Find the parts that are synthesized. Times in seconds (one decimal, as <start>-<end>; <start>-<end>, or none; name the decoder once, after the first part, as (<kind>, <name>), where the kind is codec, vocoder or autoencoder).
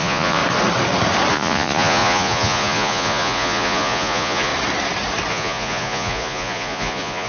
0.0-0.4 (vocoder, Vocos); 1.3-4.5; 5.3-7.3